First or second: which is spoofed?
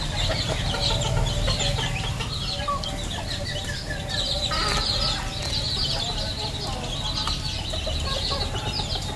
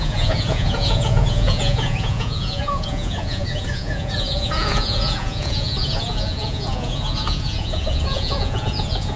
second